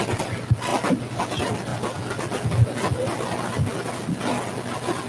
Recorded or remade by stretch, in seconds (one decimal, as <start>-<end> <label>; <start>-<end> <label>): 0.0-5.1 recorded